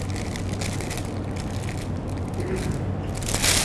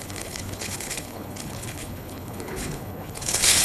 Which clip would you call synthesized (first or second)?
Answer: second